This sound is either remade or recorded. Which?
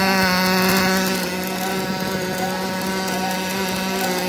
recorded